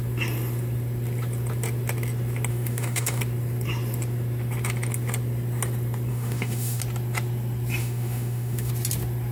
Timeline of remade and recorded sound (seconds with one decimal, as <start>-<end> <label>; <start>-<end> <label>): 0.0-2.5 recorded; 2.5-3.2 remade; 3.2-6.1 recorded; 6.1-6.8 remade; 6.8-7.8 recorded; 7.8-8.7 remade; 8.7-9.3 recorded